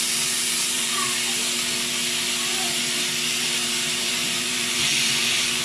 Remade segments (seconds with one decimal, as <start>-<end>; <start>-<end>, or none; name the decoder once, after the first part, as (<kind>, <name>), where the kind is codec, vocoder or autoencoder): 0.0-0.9 (vocoder, Vocos); 4.0-5.6